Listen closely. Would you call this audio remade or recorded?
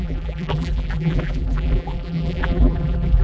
remade